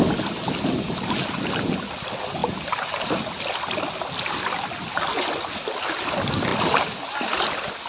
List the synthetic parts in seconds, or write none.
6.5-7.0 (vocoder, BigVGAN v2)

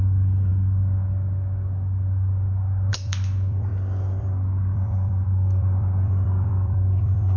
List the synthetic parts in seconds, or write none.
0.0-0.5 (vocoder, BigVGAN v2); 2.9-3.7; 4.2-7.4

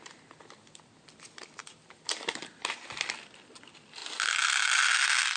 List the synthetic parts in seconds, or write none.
1.6-3.6 (vocoder, BigVGAN v2)

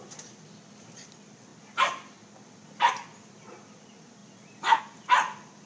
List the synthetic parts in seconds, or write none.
none

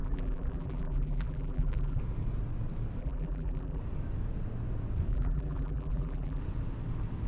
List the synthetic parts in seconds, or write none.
0.0-2.0 (vocoder, BigVGAN v2); 3.0-3.8; 5.1-6.4

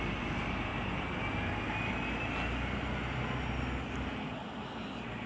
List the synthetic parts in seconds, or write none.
none